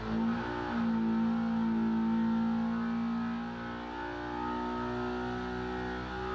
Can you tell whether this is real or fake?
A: real